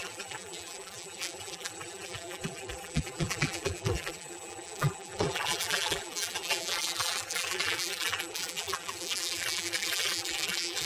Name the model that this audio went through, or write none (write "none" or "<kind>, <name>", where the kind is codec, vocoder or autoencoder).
vocoder, BigVGAN v2